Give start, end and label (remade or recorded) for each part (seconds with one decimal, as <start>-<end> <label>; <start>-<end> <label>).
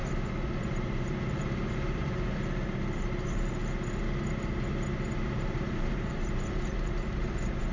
0.0-0.6 recorded; 0.6-3.6 remade; 3.6-5.2 recorded; 5.2-7.7 remade